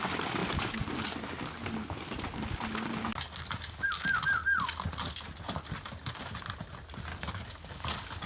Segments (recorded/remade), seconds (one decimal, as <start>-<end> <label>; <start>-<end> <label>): 0.0-7.1 recorded; 7.1-8.3 remade